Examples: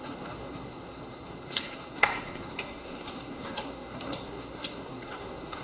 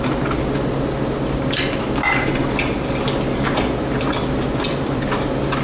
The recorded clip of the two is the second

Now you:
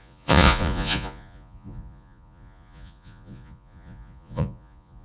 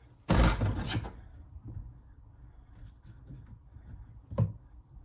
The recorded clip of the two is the second